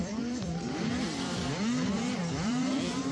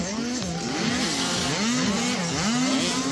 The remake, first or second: first